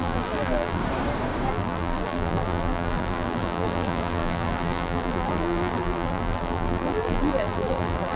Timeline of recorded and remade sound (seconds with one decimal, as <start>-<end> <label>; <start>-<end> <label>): 0.0-0.8 remade; 0.8-1.5 recorded; 1.5-8.2 remade